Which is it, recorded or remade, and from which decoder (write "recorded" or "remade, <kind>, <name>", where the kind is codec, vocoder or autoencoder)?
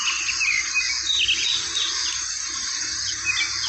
recorded